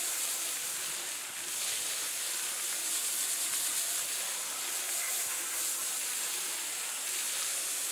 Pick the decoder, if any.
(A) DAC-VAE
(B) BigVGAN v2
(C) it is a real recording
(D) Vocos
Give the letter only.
C